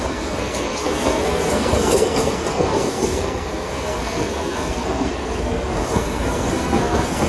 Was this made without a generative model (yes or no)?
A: no